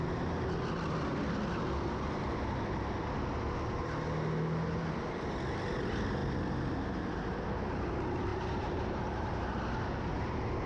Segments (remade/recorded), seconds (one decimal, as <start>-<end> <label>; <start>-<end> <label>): 0.0-8.3 recorded; 8.3-9.6 remade; 9.6-10.7 recorded